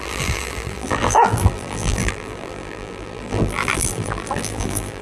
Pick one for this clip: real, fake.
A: fake